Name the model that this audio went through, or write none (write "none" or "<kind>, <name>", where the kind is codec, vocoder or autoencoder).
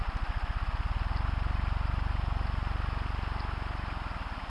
none